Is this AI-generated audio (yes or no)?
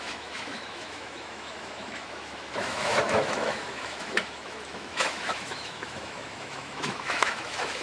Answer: yes